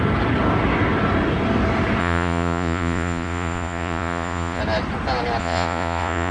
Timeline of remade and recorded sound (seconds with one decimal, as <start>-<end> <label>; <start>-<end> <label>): 0.0-2.0 recorded; 2.0-4.6 remade; 4.6-5.4 recorded; 5.4-6.3 remade